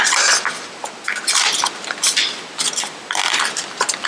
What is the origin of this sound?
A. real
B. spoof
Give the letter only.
A